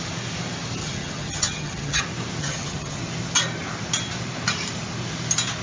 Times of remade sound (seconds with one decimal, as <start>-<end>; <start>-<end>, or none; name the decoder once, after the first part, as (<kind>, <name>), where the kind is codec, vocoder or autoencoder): 0.8-2.0 (vocoder, HiFi-GAN); 2.4-3.0